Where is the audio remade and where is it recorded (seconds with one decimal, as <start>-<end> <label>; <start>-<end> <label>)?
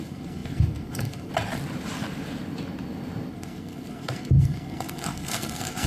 0.0-1.3 remade; 1.3-3.3 recorded; 3.3-5.9 remade